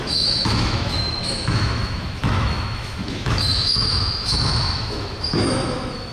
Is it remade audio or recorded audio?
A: remade